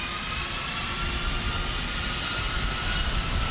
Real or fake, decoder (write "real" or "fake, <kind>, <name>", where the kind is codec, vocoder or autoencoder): real